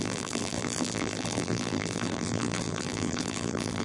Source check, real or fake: fake